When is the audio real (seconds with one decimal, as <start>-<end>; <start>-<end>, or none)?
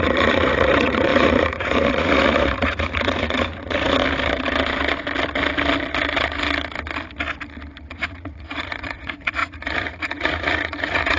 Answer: 4.0-7.8